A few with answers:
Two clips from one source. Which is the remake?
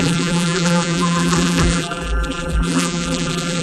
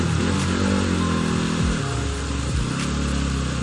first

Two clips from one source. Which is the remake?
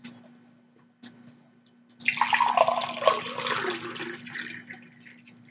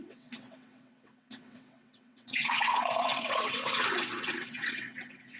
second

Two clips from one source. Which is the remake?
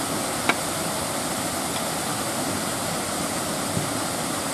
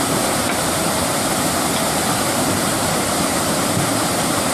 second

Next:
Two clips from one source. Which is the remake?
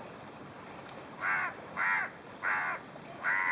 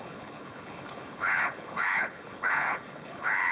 second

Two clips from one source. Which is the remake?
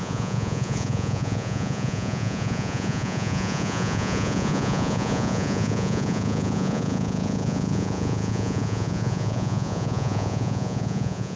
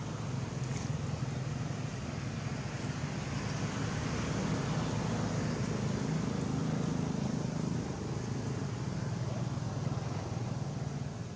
first